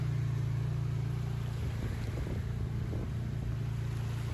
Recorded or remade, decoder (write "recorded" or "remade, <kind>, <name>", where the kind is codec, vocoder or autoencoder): recorded